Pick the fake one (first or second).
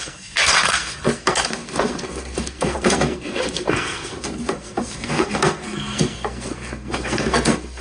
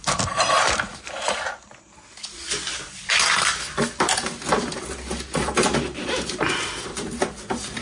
first